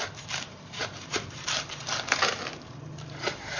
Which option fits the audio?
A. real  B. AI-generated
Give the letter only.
B